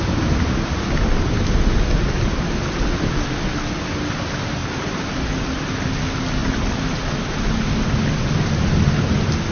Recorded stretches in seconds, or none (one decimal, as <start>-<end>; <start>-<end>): 0.0-9.5